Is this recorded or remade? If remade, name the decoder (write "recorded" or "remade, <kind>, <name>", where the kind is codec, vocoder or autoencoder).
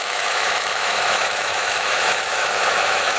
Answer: remade, autoencoder, DAC-VAE